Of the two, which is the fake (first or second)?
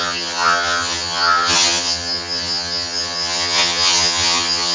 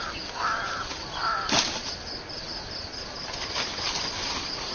first